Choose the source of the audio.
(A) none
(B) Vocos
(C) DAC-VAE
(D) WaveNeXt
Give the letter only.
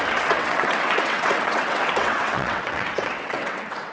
D